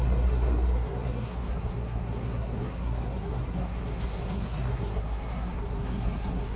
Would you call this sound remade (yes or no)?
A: yes